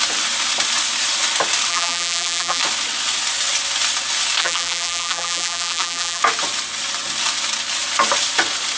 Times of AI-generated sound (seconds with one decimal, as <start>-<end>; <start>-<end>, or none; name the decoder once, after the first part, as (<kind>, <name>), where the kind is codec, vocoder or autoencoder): 1.7-2.6 (vocoder, BigVGAN v2); 4.4-6.2